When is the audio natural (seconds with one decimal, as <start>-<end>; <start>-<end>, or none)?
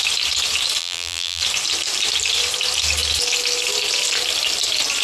0.0-0.8; 1.4-5.0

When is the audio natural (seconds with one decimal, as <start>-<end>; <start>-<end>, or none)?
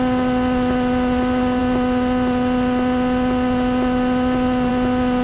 0.0-5.2